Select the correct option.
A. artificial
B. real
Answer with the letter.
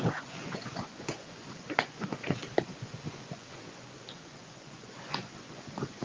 A